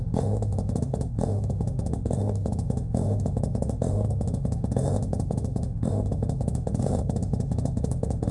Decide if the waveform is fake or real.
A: fake